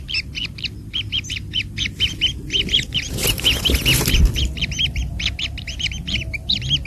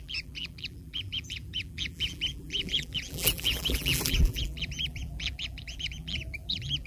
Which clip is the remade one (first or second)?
second